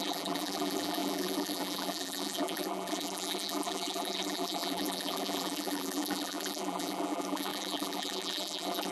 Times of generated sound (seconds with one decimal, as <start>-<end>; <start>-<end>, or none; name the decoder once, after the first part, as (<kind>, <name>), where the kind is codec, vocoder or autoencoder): 0.0-8.9 (vocoder, BigVGAN v2)